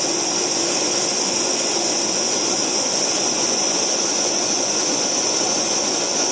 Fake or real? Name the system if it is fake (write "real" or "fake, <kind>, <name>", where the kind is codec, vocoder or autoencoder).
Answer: fake, vocoder, Vocos